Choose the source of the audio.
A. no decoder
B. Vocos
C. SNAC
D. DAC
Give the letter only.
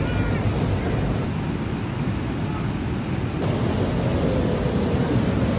A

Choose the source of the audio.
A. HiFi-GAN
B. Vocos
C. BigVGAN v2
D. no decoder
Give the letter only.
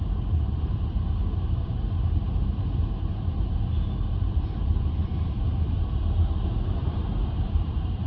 C